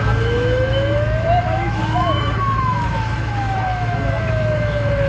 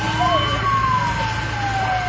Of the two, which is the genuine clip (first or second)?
second